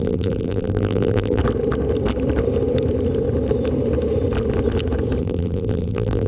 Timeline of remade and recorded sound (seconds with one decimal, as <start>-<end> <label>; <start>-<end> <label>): 0.0-1.4 remade; 1.4-5.2 recorded; 5.2-6.3 remade